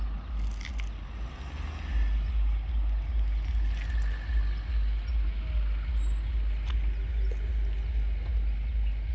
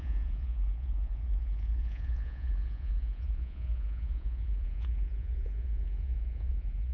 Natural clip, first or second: first